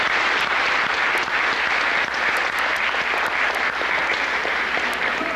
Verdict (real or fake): real